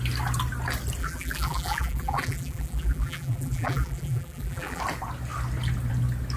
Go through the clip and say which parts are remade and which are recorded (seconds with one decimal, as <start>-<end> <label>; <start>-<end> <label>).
0.0-1.0 recorded; 1.0-4.8 remade; 4.8-6.4 recorded